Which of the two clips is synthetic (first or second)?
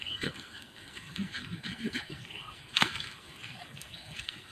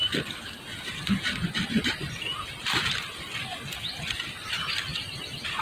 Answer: first